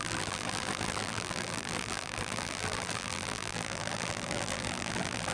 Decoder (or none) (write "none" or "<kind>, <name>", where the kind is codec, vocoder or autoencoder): vocoder, BigVGAN v2